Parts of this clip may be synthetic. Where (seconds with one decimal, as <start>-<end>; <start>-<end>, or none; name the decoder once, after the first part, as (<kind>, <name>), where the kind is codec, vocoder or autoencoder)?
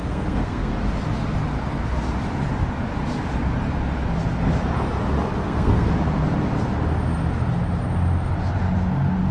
0.0-0.7 (codec, SNAC); 5.4-5.9